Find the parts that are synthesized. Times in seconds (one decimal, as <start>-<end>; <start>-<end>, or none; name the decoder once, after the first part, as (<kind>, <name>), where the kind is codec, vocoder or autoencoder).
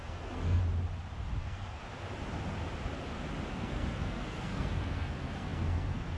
0.0-0.6 (codec, SNAC); 1.4-1.8; 3.5-6.2